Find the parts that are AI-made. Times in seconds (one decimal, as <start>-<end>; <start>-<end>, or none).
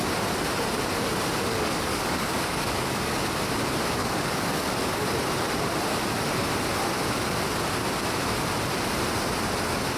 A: 1.5-3.2; 4.0-5.1